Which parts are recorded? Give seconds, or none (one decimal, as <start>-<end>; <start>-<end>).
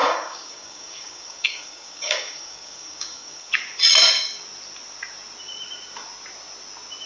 3.5-7.1